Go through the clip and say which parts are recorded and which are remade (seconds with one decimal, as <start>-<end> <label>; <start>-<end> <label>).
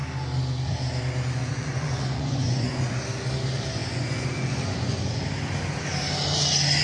0.0-1.4 recorded; 1.4-2.9 remade; 2.9-3.8 recorded; 3.8-5.2 remade; 5.2-6.8 recorded